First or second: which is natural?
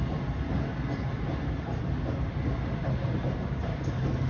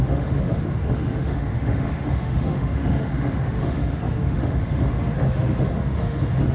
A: first